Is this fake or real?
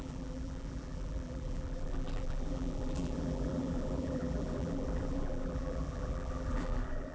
fake